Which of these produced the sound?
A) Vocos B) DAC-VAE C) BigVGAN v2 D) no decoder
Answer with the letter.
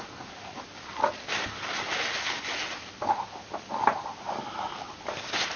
D